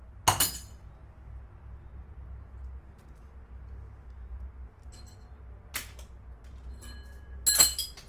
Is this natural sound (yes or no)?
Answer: yes